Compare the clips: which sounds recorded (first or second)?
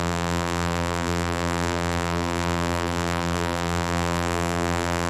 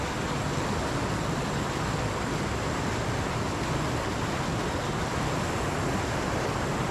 second